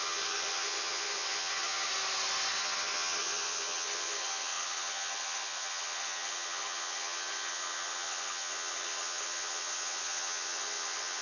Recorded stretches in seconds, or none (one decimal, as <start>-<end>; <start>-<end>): 1.9-2.5